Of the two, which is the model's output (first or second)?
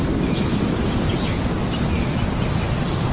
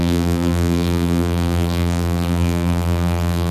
second